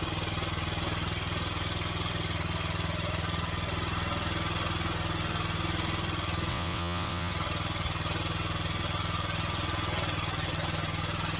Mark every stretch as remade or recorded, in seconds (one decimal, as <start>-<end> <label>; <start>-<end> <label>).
0.0-6.5 recorded; 6.5-7.3 remade; 7.3-11.4 recorded